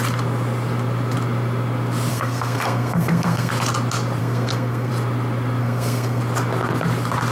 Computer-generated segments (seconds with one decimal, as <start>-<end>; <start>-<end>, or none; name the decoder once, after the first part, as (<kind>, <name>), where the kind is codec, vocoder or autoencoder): 2.1-3.5 (codec, SNAC); 4.2-4.9; 5.6-6.2